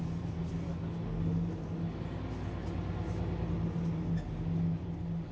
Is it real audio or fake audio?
real